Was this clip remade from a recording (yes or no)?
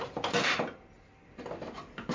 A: no